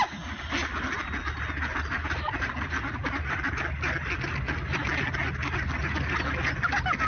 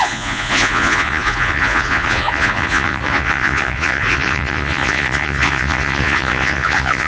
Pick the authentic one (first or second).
first